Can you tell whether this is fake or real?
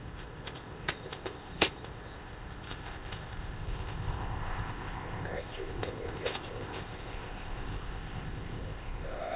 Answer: fake